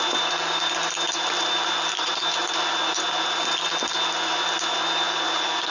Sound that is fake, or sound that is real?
real